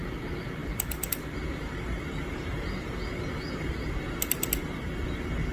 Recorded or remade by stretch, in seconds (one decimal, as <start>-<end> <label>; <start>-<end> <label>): 0.0-5.5 recorded